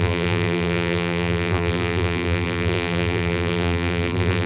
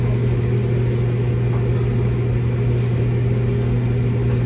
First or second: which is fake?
first